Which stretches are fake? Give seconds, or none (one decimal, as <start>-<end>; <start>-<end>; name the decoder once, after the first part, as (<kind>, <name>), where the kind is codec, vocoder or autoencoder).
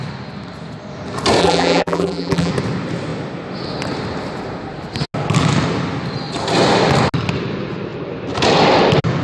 1.4-2.5 (vocoder, BigVGAN v2)